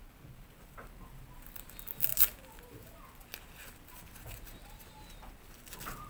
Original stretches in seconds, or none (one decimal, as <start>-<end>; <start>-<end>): 0.0-6.1